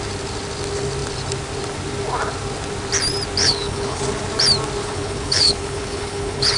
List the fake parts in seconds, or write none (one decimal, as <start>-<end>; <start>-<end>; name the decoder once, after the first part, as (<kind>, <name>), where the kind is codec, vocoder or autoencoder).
3.4-4.0 (codec, HILCodec); 4.8-6.6